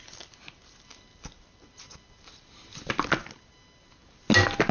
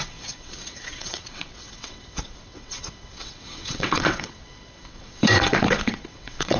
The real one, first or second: first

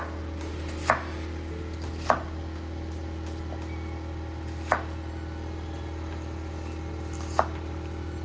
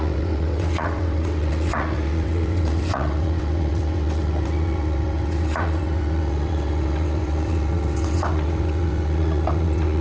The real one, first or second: first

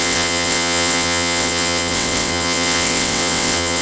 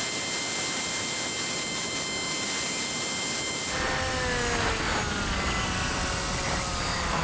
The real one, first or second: second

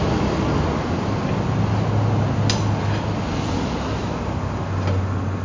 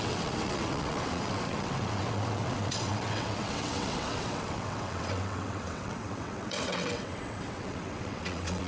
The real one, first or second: first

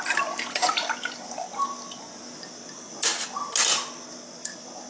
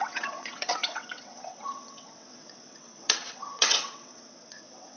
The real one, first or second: first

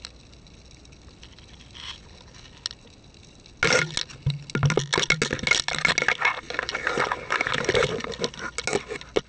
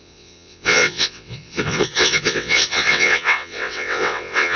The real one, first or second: first